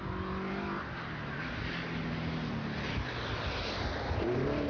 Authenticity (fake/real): real